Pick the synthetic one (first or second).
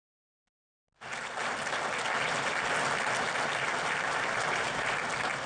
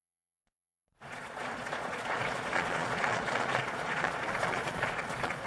second